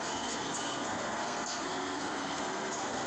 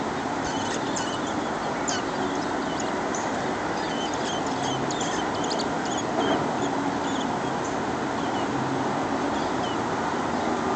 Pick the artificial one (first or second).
first